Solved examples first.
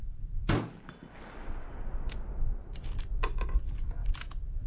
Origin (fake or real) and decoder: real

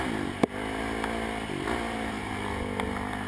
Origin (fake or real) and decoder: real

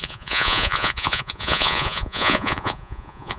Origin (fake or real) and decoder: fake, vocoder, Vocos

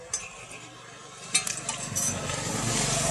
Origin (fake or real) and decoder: real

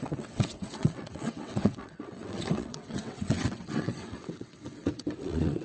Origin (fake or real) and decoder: fake, vocoder, WaveNeXt